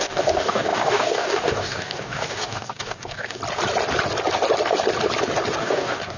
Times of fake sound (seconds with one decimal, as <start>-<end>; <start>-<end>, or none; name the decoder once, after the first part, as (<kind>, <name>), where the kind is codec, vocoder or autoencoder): 0.0-3.4 (codec, DAC); 5.6-6.2